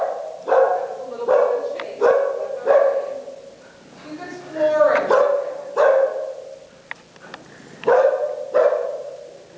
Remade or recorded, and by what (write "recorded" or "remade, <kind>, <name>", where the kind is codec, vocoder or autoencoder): recorded